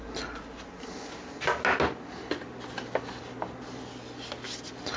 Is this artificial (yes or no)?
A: no